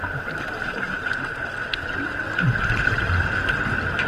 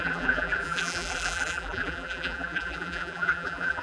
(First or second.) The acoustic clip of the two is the first